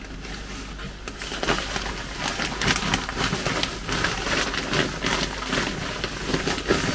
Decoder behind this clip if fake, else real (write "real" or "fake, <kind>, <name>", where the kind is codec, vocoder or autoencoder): real